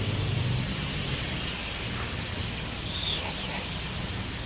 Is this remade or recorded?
recorded